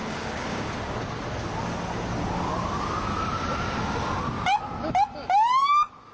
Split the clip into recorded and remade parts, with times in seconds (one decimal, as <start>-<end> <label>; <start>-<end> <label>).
0.0-0.7 remade; 0.7-6.1 recorded